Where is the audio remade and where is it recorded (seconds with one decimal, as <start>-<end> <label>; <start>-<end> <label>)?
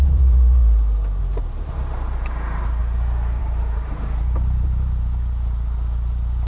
0.0-0.6 remade; 0.6-1.2 recorded; 1.2-2.8 remade; 2.8-3.4 recorded; 3.4-6.5 remade